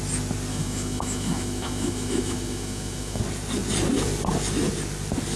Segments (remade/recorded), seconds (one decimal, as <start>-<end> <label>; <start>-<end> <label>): 0.0-0.5 recorded; 0.5-3.2 remade; 3.2-5.4 recorded

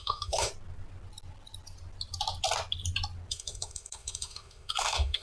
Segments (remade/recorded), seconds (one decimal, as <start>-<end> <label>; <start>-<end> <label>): 0.0-0.5 remade; 0.5-3.3 recorded; 3.3-5.2 remade

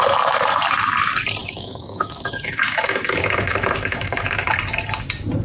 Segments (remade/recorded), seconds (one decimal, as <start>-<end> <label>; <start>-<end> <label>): 0.0-1.4 recorded; 1.4-4.5 remade; 4.5-5.4 recorded

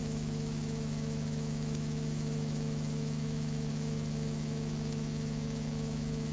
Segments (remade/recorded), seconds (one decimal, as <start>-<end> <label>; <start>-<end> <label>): 0.0-6.3 remade

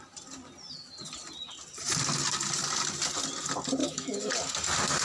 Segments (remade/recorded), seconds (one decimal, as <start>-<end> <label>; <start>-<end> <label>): 0.0-3.8 recorded; 3.8-4.3 remade; 4.3-5.0 recorded

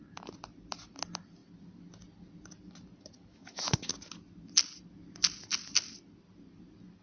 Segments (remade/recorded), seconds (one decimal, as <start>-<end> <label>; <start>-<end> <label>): 0.0-3.3 recorded; 3.3-3.9 remade; 3.9-7.0 recorded

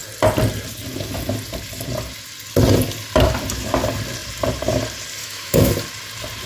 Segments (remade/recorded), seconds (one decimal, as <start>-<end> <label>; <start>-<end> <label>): 0.0-5.2 recorded; 5.2-5.7 remade; 5.7-6.5 recorded